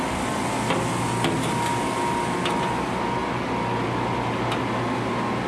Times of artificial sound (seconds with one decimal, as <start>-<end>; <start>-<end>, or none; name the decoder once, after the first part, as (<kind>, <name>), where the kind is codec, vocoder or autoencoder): none